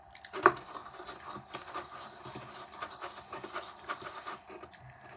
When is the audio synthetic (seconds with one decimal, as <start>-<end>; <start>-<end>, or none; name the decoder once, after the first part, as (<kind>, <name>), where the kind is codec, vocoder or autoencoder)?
0.0-0.8 (vocoder, BigVGAN v2); 3.9-5.2

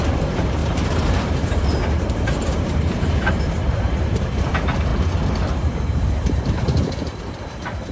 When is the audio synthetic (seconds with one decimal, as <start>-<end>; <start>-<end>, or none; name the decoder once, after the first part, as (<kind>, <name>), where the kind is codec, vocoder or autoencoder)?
0.0-4.9 (vocoder, BigVGAN v2); 5.5-7.9

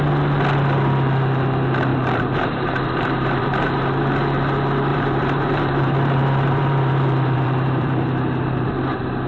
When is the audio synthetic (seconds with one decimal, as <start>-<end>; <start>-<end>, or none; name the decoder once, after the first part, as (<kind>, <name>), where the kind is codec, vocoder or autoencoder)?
1.9-4.1 (vocoder, BigVGAN v2); 4.9-8.7